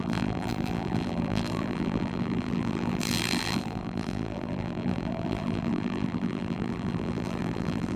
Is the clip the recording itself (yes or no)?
no